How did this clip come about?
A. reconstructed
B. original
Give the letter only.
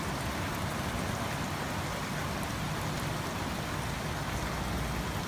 B